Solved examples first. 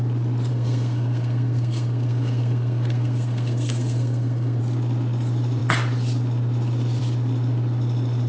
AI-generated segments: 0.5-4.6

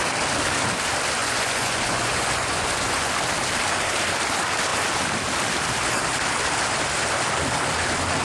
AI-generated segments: 1.2-3.1

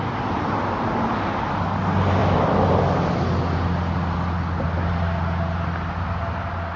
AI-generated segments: none

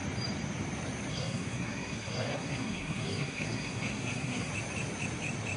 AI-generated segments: 1.1-4.5

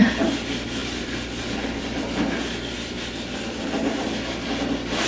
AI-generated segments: none

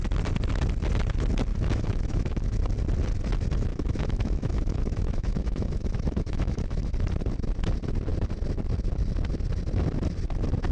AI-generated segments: 1.5-2.6; 3.7-6.9